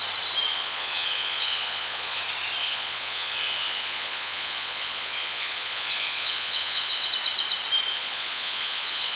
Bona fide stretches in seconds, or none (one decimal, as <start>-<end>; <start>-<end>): 0.0-0.5; 2.2-2.6; 7.1-7.9